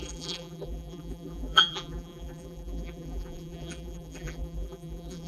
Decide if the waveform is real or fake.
fake